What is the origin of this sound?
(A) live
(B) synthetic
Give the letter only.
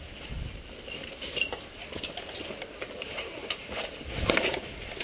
A